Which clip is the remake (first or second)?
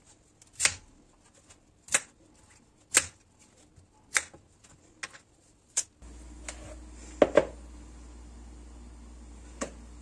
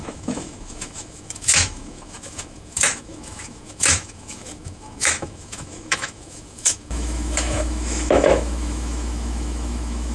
second